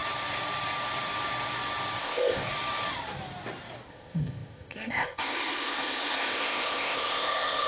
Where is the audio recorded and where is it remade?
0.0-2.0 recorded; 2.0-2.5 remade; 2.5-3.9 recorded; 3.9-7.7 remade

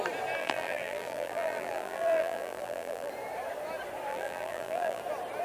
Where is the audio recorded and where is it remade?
0.0-0.4 recorded; 0.4-3.1 remade; 3.1-4.1 recorded; 4.1-5.0 remade; 5.0-5.4 recorded

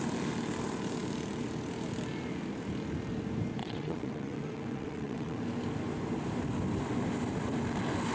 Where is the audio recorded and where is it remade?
0.0-3.6 recorded; 3.6-5.4 remade; 5.4-8.1 recorded

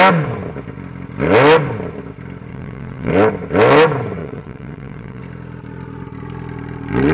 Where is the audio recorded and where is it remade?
0.0-2.5 recorded; 2.5-3.1 remade; 3.1-4.2 recorded; 4.2-5.2 remade; 5.2-7.1 recorded

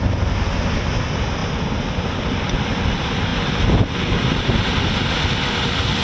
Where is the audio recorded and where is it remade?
0.0-6.0 recorded

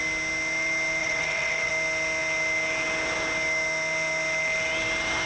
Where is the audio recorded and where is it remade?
0.0-1.0 recorded; 1.0-1.7 remade; 1.7-5.3 recorded

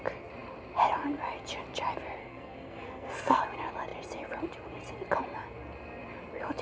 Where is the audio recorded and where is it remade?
0.0-2.2 recorded; 2.2-3.4 remade; 3.4-6.6 recorded